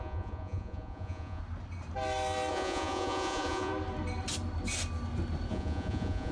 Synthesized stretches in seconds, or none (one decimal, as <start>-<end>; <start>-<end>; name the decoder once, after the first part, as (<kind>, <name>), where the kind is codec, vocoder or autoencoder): 0.0-1.4 (vocoder, Vocos); 2.5-3.7; 5.5-6.3